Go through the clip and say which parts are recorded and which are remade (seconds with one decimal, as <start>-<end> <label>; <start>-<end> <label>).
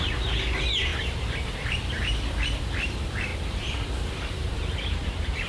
0.0-5.5 remade